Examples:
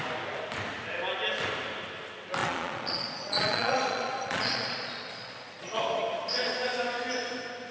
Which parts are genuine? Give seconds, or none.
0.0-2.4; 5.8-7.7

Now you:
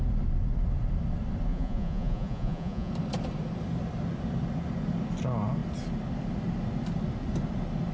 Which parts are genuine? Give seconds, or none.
0.0-1.5; 2.9-7.9

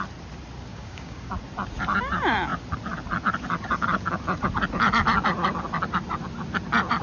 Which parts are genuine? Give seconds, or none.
0.0-0.7; 1.3-7.0

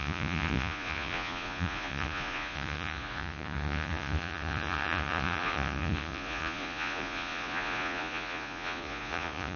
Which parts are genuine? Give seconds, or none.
none

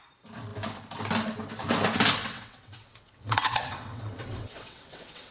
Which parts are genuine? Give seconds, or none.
0.0-2.2

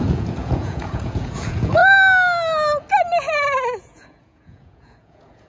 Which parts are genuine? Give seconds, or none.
1.8-3.8